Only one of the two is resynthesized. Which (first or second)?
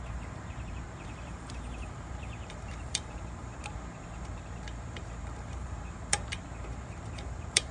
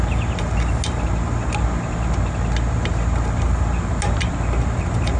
first